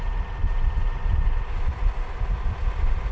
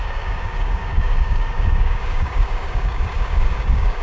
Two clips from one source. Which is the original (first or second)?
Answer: first